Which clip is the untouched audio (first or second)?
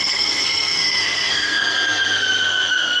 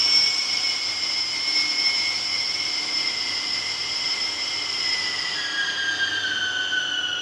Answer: second